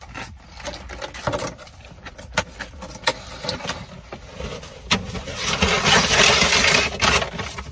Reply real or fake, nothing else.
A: real